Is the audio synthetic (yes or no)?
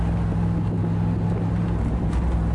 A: no